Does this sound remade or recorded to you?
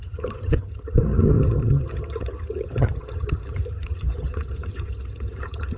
remade